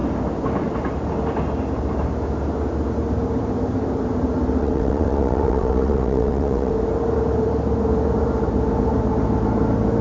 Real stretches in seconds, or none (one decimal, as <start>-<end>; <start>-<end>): 0.0-4.6; 6.7-10.0